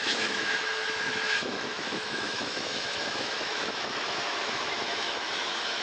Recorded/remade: remade